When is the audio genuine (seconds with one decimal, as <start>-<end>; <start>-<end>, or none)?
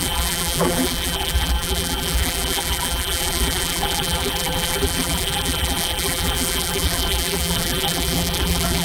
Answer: none